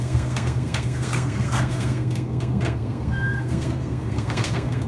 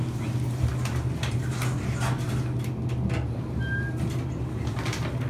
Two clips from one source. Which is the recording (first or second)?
second